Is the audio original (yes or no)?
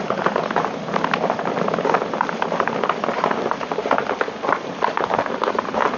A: yes